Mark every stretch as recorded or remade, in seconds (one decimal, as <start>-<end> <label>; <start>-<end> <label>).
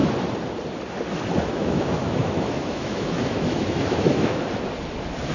0.0-1.4 recorded; 1.4-4.4 remade; 4.4-5.3 recorded